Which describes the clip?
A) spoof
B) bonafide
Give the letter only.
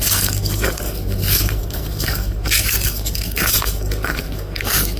A